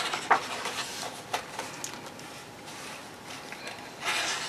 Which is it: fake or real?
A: real